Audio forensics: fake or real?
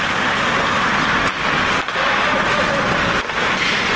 real